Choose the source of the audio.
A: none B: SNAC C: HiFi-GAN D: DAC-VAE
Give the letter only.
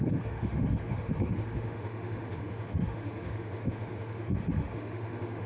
D